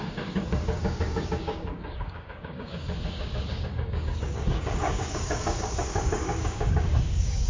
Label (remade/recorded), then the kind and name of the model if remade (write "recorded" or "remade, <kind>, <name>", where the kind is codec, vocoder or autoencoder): remade, codec, DAC